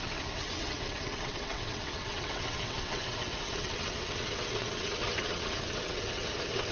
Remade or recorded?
remade